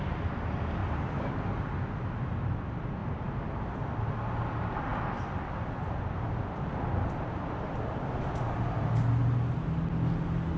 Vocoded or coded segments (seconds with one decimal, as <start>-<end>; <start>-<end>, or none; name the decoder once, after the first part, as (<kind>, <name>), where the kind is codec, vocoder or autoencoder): none